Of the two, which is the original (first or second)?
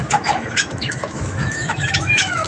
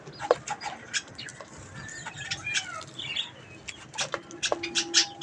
second